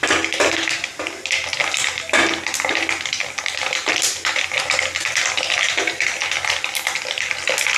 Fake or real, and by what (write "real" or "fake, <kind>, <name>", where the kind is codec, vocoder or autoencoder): real